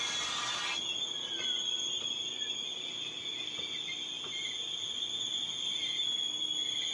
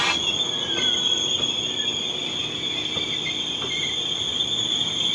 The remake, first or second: second